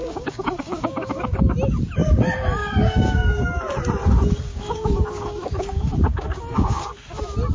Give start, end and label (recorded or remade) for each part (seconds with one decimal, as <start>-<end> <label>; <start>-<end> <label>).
0.0-1.4 remade; 1.4-2.6 recorded; 2.6-3.6 remade; 3.6-4.5 recorded; 4.5-6.8 remade; 6.8-7.5 recorded